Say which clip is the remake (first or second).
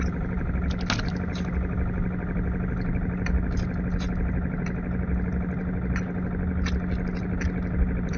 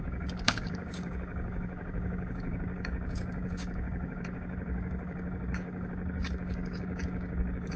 second